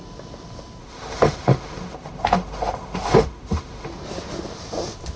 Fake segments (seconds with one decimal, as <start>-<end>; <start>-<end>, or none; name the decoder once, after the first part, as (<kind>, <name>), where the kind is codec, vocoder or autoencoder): 0.8-3.9 (autoencoder, DAC-VAE)